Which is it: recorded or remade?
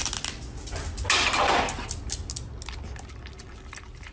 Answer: recorded